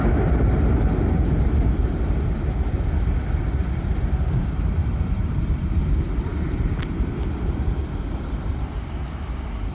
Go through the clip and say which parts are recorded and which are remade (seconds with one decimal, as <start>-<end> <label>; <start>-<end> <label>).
0.0-4.8 recorded; 4.8-5.8 remade; 5.8-9.7 recorded